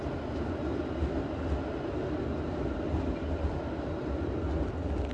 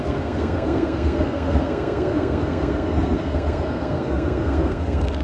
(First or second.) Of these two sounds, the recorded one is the first